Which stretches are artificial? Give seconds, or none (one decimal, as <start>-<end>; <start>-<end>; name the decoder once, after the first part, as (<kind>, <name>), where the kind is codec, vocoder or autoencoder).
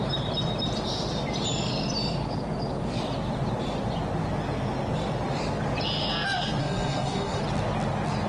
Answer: 6.6-7.4 (codec, SNAC)